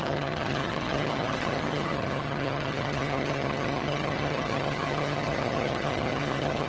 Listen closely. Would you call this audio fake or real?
fake